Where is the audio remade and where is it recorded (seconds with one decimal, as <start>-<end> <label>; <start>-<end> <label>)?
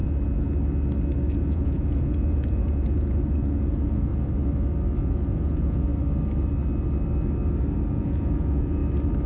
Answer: 0.0-1.4 recorded; 1.4-4.1 remade; 4.1-5.0 recorded; 5.0-5.9 remade; 5.9-7.9 recorded; 7.9-8.8 remade; 8.8-9.3 recorded